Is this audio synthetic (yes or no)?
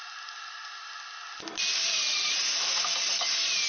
no